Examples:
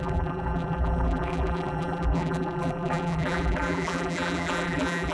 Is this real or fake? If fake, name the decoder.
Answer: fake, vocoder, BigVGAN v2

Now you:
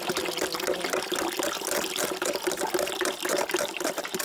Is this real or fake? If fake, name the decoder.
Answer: real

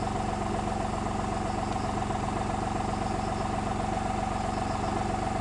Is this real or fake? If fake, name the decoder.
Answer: real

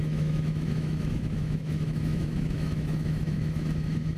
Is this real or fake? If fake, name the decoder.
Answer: fake, autoencoder, DAC-VAE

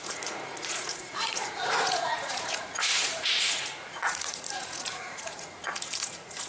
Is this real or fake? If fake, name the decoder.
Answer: fake, vocoder, Vocos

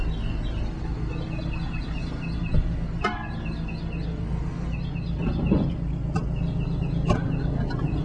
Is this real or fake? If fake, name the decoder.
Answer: real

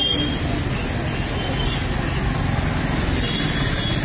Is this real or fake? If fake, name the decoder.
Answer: real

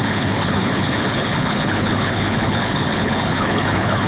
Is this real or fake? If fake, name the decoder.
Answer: fake, codec, HILCodec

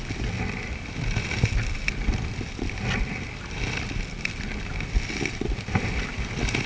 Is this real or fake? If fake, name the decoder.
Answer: real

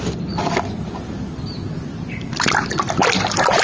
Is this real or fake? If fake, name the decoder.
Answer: real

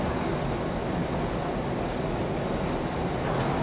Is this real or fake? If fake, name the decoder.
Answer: real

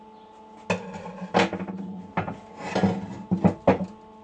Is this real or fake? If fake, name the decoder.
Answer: real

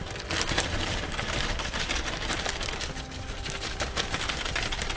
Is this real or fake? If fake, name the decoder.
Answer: fake, vocoder, BigVGAN v2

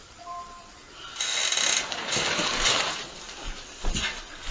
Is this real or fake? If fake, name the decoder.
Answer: fake, vocoder, BigVGAN v2